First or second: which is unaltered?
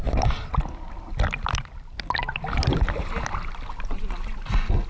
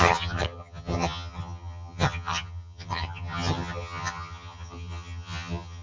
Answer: first